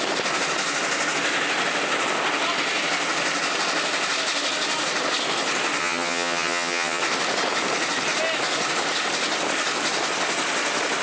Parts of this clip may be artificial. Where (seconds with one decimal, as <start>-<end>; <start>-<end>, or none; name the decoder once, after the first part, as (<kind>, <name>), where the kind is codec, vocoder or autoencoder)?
5.8-7.0 (vocoder, HiFi-GAN)